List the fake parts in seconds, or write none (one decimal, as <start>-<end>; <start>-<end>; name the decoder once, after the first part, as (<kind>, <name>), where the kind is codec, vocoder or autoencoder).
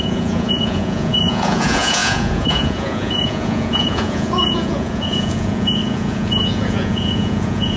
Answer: 0.0-7.8 (vocoder, Vocos)